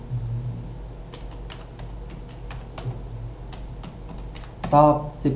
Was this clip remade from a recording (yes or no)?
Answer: no